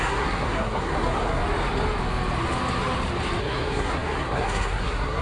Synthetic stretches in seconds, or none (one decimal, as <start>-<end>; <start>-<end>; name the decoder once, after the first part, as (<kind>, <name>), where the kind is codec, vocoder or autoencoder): 0.0-1.4 (codec, SNAC); 3.4-5.2